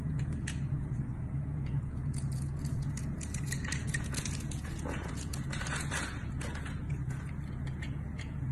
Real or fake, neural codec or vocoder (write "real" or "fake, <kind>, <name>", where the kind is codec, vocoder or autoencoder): fake, vocoder, Vocos